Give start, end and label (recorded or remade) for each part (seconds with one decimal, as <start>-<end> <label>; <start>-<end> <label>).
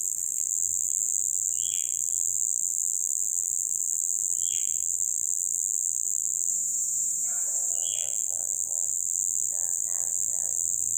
0.0-6.5 remade; 6.5-7.7 recorded; 7.7-11.0 remade